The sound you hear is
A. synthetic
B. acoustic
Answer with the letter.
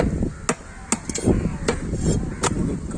B